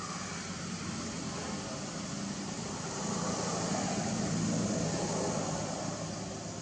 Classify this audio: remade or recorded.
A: recorded